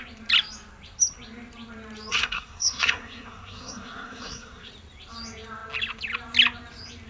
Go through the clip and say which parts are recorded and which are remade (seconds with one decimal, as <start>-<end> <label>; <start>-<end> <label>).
0.0-2.1 recorded; 2.1-4.7 remade; 4.7-7.1 recorded